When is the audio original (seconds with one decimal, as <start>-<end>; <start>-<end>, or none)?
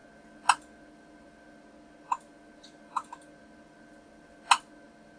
0.0-5.2